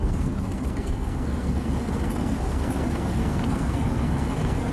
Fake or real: fake